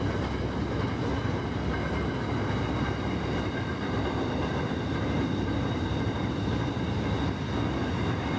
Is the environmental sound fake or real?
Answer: real